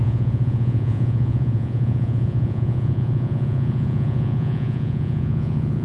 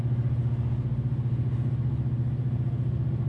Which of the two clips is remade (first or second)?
first